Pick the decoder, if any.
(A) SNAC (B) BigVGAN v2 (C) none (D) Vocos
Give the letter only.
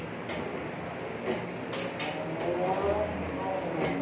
C